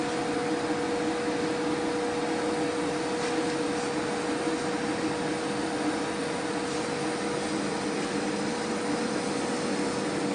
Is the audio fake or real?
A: real